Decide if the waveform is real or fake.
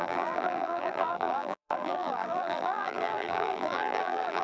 fake